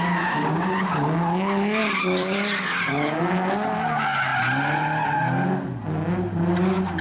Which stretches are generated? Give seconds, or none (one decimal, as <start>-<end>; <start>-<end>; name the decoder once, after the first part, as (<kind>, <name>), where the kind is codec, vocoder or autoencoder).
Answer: 1.8-3.2 (vocoder, BigVGAN v2)